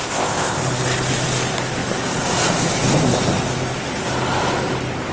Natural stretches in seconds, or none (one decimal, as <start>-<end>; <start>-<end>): 0.6-5.1